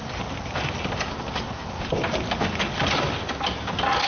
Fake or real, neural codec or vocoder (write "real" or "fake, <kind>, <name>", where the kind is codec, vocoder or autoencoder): real